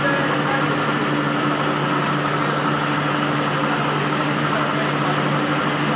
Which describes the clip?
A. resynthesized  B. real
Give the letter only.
B